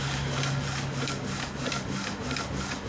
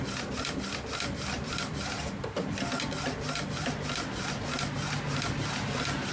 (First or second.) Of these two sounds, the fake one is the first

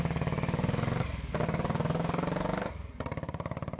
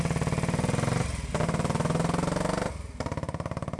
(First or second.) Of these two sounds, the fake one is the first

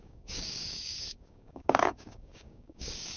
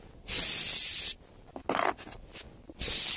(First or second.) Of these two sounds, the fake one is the first